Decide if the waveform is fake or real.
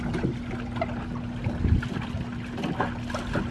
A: real